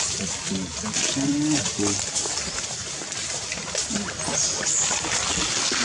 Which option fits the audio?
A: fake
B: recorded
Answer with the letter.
B